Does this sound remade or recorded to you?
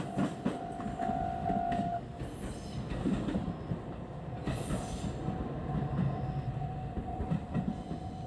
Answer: recorded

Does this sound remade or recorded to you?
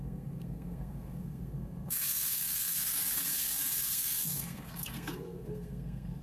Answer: remade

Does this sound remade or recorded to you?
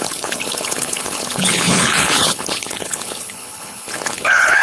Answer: remade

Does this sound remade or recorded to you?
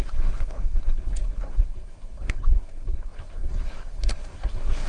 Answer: remade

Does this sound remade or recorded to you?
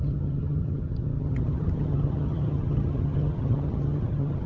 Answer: remade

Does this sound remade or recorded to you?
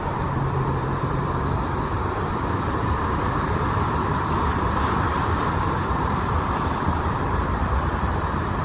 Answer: remade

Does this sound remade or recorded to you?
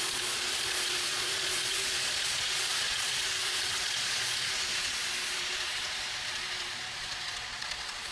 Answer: remade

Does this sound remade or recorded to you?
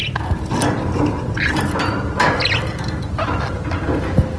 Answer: recorded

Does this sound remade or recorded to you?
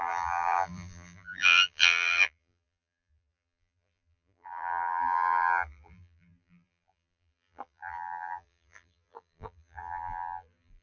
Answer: remade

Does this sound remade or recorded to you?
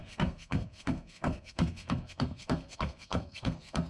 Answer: remade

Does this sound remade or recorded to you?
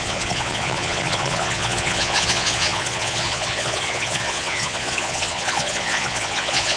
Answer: remade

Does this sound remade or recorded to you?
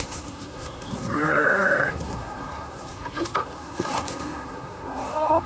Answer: remade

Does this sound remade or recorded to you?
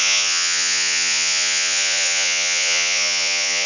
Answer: remade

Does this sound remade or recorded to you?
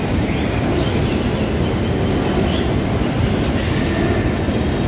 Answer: recorded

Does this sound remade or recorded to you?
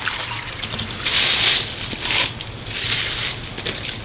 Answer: recorded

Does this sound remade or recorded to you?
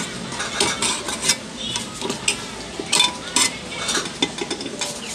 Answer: recorded